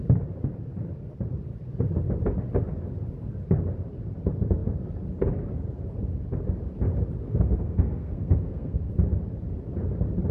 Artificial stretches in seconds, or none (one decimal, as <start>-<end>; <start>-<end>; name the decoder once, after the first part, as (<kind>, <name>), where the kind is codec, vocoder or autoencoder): 7.2-8.9 (codec, SNAC)